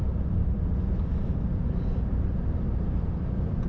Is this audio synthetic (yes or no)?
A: no